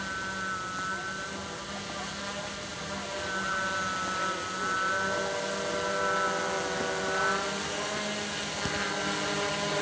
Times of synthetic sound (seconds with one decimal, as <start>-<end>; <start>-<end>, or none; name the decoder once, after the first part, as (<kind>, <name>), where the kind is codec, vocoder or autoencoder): none